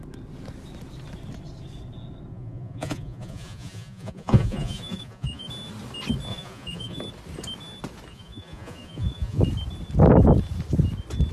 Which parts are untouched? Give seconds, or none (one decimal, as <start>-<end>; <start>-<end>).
0.0-2.3; 5.5-6.3; 7.0-8.1; 9.4-11.3